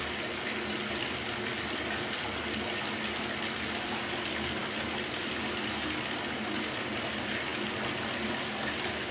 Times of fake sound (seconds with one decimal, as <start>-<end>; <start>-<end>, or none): none